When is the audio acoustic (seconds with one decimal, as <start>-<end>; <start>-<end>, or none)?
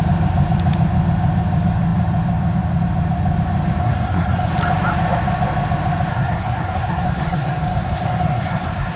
0.0-3.8; 4.5-6.1